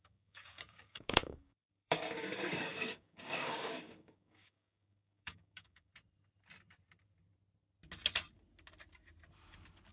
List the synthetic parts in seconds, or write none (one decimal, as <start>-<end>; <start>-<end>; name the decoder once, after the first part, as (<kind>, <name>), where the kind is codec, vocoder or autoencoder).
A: 0.0-5.9 (codec, DAC)